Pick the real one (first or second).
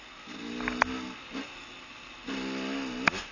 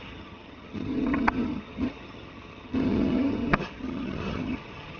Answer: first